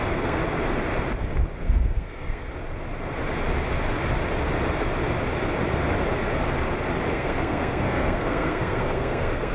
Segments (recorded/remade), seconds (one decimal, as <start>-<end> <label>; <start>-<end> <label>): 0.0-0.4 remade; 0.4-1.6 recorded; 1.6-2.5 remade; 2.5-7.1 recorded; 7.1-9.5 remade